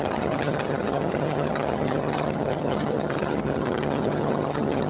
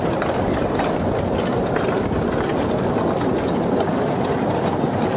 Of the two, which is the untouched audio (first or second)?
second